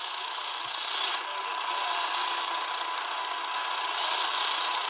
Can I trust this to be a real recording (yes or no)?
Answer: yes